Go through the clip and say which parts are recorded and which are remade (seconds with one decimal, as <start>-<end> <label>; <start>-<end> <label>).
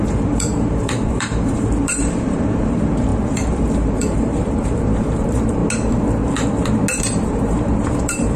0.0-5.6 remade; 5.6-7.0 recorded; 7.0-8.4 remade